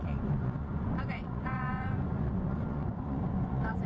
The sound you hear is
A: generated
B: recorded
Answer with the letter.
A